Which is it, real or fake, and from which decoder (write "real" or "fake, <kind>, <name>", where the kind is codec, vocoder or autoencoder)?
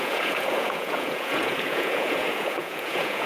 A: fake, vocoder, Vocos